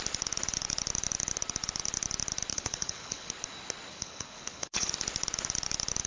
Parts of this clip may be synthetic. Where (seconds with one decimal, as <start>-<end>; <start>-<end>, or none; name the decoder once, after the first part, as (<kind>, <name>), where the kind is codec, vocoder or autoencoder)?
2.5-3.3 (codec, HILCodec); 3.9-4.9